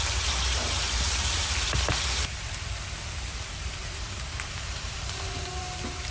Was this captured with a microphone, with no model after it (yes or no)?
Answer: no